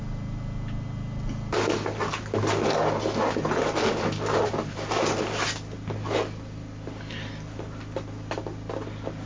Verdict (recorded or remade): recorded